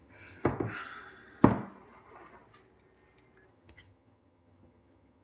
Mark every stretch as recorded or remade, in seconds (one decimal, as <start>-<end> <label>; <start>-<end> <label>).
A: 0.0-0.4 remade; 0.4-3.5 recorded; 3.5-5.2 remade